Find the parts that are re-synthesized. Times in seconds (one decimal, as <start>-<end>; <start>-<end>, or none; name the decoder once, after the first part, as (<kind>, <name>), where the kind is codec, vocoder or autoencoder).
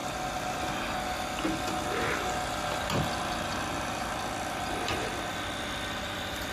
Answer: none